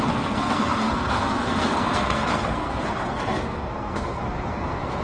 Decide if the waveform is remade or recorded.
remade